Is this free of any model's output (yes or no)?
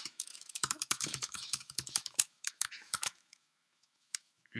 no